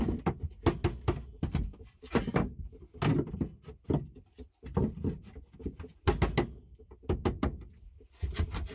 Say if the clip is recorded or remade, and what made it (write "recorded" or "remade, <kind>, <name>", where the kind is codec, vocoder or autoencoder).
recorded